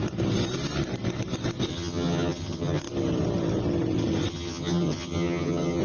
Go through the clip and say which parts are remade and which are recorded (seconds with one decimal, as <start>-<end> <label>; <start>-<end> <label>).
0.0-1.7 recorded; 1.7-2.8 remade; 2.8-4.3 recorded; 4.3-5.8 remade